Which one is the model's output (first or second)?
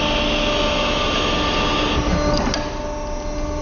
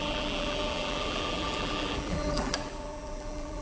second